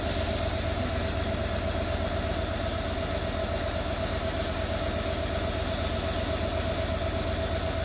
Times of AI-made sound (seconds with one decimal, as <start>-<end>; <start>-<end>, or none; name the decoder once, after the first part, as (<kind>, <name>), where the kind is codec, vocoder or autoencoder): 0.8-1.4 (autoencoder, DAC-VAE); 3.4-4.5